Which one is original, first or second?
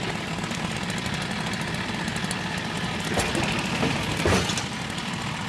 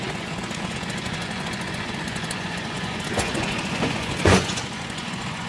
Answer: first